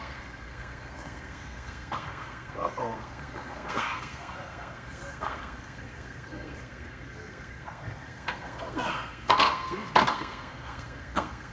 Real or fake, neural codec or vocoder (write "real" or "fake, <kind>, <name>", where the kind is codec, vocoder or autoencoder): fake, codec, SNAC